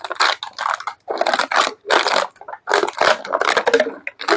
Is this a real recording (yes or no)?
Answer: yes